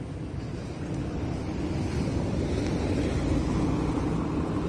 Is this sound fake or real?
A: real